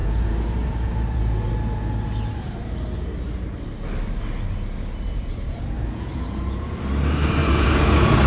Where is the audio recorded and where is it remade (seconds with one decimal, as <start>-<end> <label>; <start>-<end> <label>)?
0.0-1.5 remade; 1.5-5.1 recorded; 5.1-6.8 remade; 6.8-7.4 recorded; 7.4-8.3 remade